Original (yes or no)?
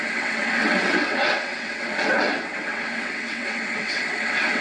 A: no